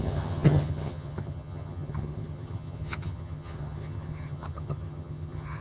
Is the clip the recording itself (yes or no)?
no